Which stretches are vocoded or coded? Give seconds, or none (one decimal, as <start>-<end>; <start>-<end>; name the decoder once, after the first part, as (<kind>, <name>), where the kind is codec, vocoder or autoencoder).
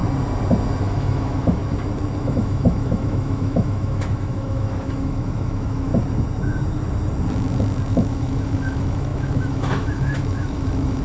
0.8-1.6 (autoencoder, DAC-VAE); 2.2-5.9; 7.9-11.0